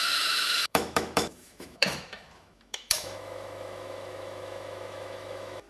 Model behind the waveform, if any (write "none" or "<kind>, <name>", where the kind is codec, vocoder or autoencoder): autoencoder, DAC-VAE